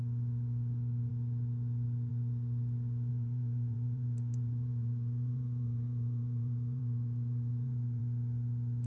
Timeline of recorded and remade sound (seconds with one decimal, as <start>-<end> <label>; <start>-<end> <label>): 0.0-3.1 recorded; 3.1-8.0 remade; 8.0-8.9 recorded